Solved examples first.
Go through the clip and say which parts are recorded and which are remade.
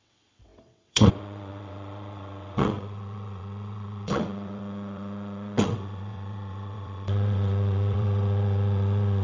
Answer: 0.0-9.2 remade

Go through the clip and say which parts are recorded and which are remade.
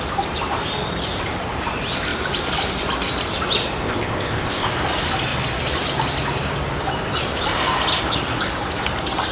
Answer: 0.0-3.8 recorded; 3.8-4.7 remade; 4.7-9.3 recorded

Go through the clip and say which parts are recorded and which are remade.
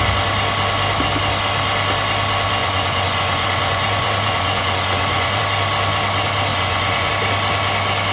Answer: 0.0-2.6 recorded; 2.6-5.4 remade; 5.4-6.5 recorded; 6.5-7.1 remade; 7.1-8.1 recorded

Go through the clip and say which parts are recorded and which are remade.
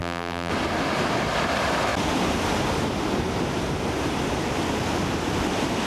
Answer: 0.0-0.5 remade; 0.5-5.9 recorded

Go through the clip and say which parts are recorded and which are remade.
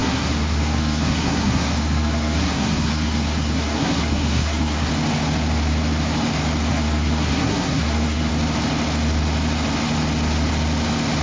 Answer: 0.0-4.9 remade; 4.9-6.7 recorded; 6.7-8.3 remade; 8.3-11.2 recorded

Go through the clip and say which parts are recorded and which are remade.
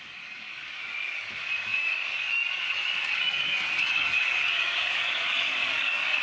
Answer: 0.0-6.2 remade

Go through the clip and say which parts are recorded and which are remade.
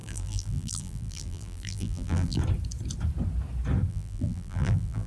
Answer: 0.0-2.4 remade; 2.4-3.9 recorded; 3.9-5.1 remade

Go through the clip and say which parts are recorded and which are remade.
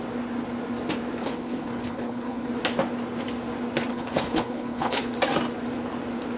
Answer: 0.0-1.2 recorded; 1.2-2.5 remade; 2.5-3.9 recorded; 3.9-5.1 remade; 5.1-6.4 recorded